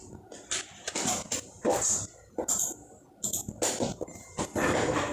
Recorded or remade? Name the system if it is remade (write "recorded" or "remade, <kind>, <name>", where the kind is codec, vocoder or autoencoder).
recorded